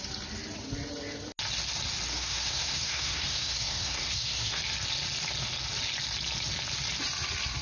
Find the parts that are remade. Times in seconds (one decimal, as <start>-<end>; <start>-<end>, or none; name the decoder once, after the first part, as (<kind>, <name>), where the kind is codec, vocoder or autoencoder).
2.1-4.6 (codec, SNAC)